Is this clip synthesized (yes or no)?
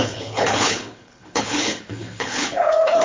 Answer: yes